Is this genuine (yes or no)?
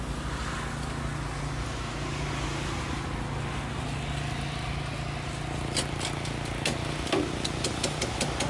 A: yes